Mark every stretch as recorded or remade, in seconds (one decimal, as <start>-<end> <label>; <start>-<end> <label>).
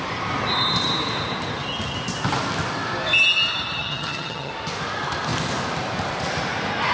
0.0-3.8 recorded; 3.8-4.5 remade; 4.5-6.9 recorded